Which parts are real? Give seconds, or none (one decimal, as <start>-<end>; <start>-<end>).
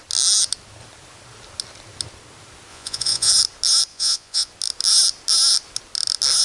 0.0-2.7; 3.3-3.9; 4.5-6.4